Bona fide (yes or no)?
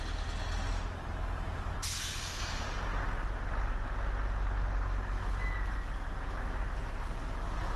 yes